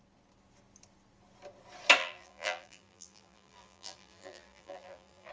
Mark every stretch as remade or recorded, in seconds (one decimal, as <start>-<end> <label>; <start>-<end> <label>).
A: 0.0-2.0 recorded; 2.0-5.3 remade